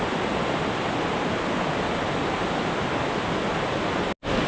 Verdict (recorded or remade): recorded